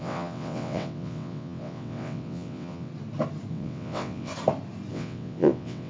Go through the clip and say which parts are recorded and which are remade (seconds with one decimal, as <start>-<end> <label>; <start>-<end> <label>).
0.0-2.9 remade; 2.9-3.5 recorded; 3.5-4.3 remade; 4.3-4.9 recorded; 4.9-5.9 remade